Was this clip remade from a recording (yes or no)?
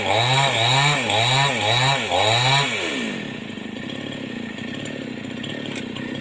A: no